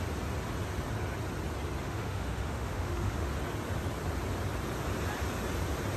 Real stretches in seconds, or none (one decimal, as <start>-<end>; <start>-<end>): 0.0-1.8; 3.3-6.0